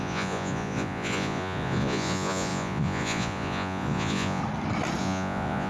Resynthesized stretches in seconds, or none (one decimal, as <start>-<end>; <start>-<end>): 0.0-4.4; 5.0-5.7